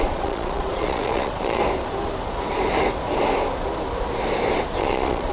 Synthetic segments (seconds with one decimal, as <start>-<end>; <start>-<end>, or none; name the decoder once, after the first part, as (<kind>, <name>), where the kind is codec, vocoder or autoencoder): 0.0-1.6 (vocoder, Vocos); 4.8-5.3

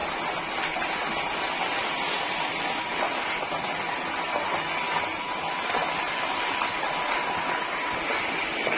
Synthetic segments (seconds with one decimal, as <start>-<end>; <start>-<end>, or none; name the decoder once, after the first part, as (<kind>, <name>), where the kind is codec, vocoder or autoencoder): none